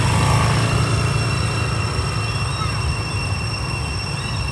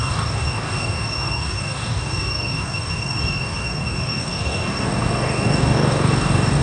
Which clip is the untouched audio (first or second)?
first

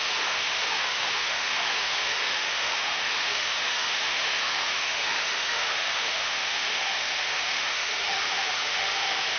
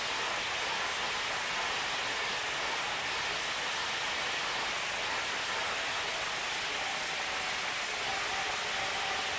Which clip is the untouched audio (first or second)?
second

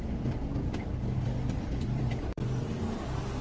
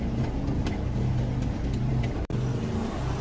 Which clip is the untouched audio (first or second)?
second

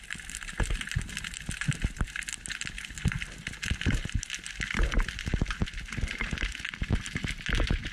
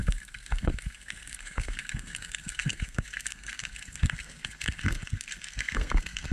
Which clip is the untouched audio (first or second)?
first